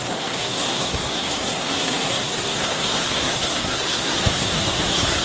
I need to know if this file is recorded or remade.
remade